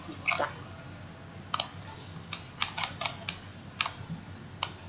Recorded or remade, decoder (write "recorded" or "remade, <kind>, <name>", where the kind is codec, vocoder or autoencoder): recorded